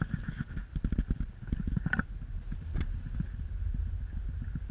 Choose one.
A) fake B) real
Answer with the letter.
B